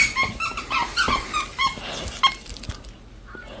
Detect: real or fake real